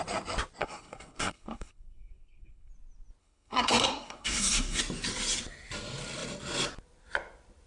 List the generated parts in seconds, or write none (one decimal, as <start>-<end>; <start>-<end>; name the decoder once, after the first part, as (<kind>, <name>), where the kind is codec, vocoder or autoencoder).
0.6-2.7 (codec, SNAC); 3.2-4.8